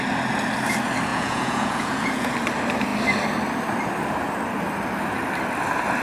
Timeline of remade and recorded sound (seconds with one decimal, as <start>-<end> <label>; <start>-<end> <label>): 0.0-1.1 recorded; 1.1-2.3 remade; 2.3-6.0 recorded